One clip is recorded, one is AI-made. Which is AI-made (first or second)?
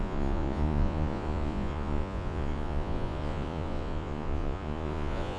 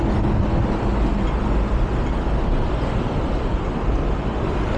first